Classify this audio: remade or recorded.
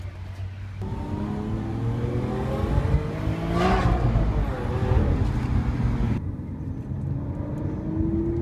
recorded